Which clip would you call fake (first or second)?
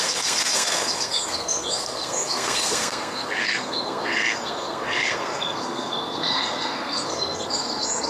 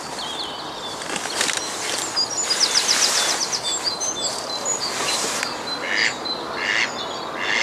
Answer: first